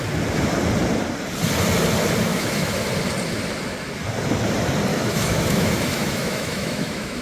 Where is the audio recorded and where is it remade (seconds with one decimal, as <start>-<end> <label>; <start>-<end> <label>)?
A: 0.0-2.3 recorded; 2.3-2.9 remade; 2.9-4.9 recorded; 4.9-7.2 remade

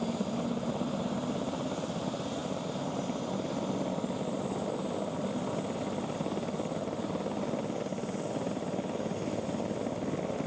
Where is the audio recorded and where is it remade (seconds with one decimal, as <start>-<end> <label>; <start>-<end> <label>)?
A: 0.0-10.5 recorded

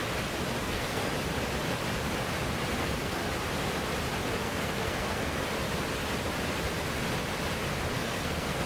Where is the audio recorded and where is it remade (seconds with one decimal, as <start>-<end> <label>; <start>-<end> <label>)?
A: 0.0-0.6 recorded; 0.6-1.1 remade; 1.1-2.8 recorded; 2.8-3.2 remade; 3.2-4.4 recorded; 4.4-5.5 remade; 5.5-7.9 recorded; 7.9-8.7 remade

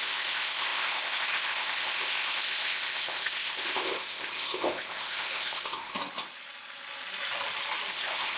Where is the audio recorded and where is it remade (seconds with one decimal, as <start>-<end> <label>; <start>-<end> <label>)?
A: 0.0-6.0 remade; 6.0-7.9 recorded; 7.9-8.4 remade

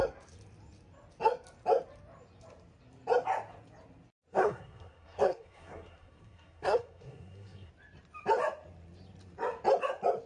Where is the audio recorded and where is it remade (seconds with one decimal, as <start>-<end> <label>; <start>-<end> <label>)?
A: 0.0-4.3 recorded; 4.3-7.7 remade; 7.7-10.3 recorded

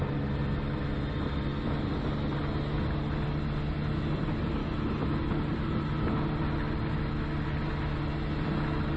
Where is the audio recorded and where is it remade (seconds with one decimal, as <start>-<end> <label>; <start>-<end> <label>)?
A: 0.0-4.6 recorded; 4.6-5.2 remade; 5.2-9.0 recorded